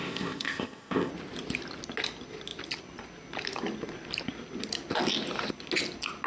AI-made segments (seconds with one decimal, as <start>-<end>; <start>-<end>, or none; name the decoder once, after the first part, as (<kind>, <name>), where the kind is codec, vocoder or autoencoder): 0.0-1.1 (codec, ZipCodec)